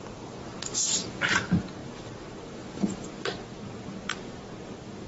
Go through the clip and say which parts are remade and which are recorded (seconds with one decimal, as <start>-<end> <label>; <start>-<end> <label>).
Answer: 0.0-5.1 recorded